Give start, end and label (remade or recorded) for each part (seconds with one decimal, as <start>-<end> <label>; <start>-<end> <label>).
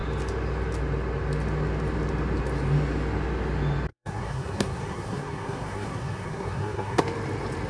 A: 0.0-3.9 recorded; 3.9-7.0 remade; 7.0-7.7 recorded